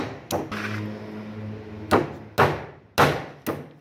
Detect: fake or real real